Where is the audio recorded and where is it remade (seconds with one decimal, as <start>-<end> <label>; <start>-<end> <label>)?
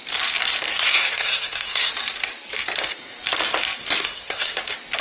0.0-0.7 recorded; 0.7-1.9 remade; 1.9-3.8 recorded; 3.8-4.6 remade; 4.6-5.0 recorded